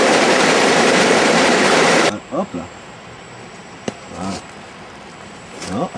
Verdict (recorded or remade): remade